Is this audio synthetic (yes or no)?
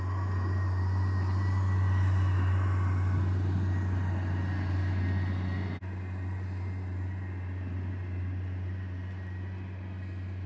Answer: no